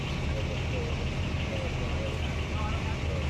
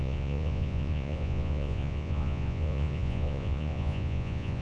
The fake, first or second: second